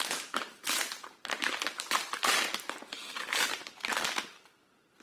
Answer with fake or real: fake